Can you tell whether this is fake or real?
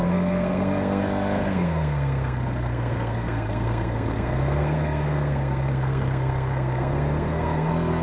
fake